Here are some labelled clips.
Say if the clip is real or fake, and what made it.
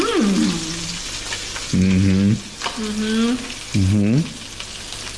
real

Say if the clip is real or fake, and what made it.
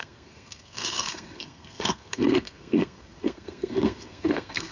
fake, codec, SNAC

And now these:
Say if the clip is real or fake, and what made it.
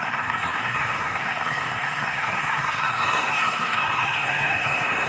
fake, codec, SNAC